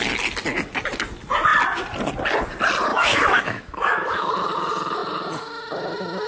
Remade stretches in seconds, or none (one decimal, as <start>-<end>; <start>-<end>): 2.9-4.3